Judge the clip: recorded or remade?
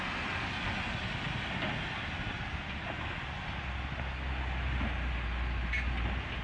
recorded